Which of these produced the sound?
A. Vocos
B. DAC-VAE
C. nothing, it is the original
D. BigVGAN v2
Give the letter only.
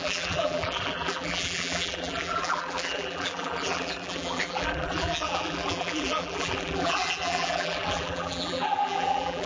D